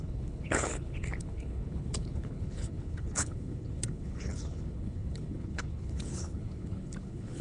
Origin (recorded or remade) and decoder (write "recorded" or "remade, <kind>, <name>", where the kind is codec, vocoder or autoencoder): remade, codec, HILCodec